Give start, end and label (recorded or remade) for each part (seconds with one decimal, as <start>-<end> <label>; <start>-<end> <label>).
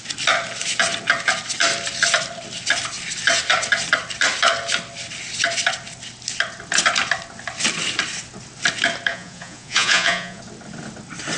0.0-9.1 recorded; 9.1-10.4 remade; 10.4-11.4 recorded